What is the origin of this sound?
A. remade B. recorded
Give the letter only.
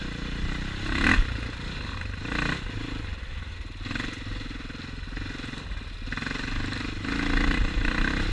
B